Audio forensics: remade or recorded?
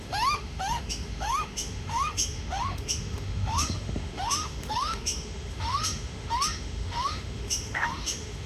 remade